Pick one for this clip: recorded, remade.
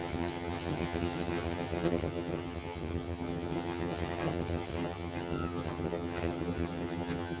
remade